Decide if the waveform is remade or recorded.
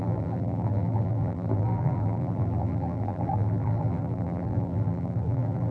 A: remade